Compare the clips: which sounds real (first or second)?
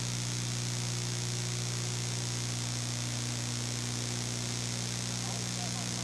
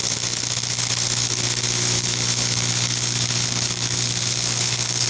first